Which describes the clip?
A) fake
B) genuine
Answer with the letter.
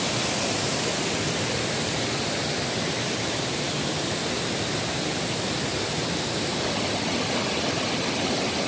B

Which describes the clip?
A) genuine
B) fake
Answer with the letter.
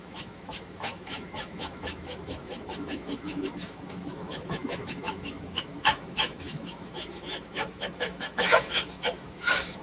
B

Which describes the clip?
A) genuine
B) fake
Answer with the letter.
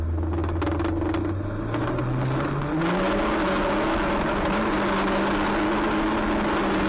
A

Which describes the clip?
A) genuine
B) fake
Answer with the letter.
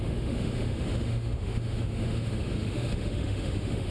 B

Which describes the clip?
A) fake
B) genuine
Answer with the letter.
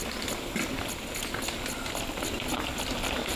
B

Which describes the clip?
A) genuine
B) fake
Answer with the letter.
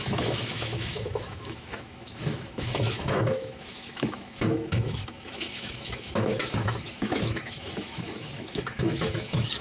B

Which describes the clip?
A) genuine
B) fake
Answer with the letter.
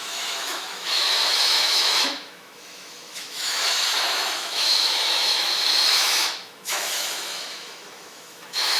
B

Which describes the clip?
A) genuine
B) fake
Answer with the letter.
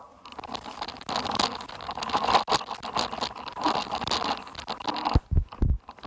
A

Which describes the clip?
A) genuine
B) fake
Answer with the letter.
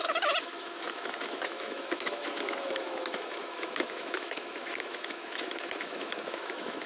B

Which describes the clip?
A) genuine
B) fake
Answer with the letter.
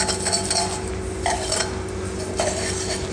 A